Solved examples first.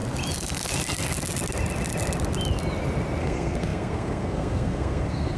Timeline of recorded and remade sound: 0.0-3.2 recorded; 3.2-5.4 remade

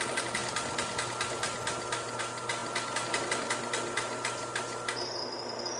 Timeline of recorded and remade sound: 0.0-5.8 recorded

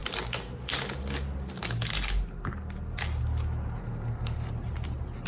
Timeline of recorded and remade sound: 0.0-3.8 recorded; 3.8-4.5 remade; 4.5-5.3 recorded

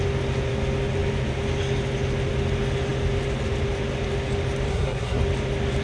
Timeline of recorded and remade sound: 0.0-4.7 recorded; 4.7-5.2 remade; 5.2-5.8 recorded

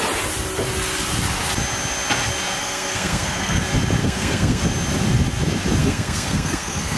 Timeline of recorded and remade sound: 0.0-2.6 recorded; 2.6-3.6 remade; 3.6-4.0 recorded; 4.0-4.6 remade; 4.6-5.8 recorded; 5.8-7.0 remade